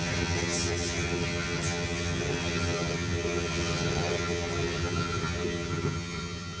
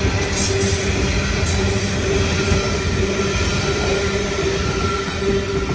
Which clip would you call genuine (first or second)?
second